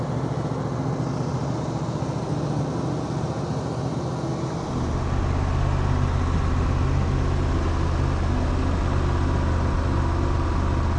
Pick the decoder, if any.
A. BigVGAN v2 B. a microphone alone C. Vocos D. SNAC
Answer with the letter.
B